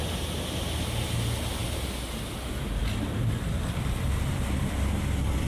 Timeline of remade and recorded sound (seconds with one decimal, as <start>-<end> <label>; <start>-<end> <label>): 0.0-5.5 recorded